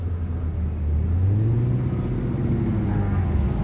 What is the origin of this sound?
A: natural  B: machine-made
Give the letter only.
A